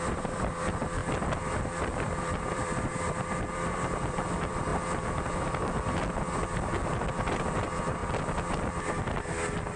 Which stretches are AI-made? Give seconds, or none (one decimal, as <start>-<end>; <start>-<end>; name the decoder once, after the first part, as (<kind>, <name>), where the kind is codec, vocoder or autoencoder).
0.0-1.0 (vocoder, BigVGAN v2); 1.6-4.7; 7.1-8.0